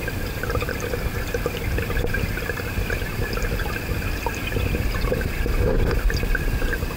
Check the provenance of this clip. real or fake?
fake